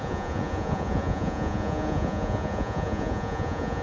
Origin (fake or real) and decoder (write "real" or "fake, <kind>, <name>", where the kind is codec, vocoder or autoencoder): fake, vocoder, Vocos